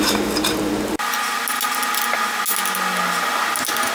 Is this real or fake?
real